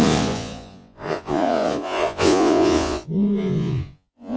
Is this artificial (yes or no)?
yes